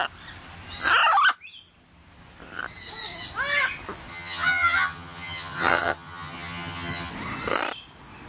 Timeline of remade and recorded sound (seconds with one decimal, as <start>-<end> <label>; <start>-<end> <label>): 0.0-4.1 recorded; 4.1-7.1 remade; 7.1-8.3 recorded